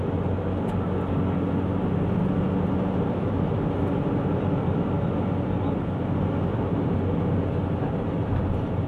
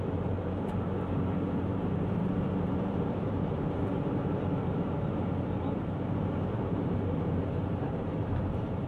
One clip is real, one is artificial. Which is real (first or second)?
first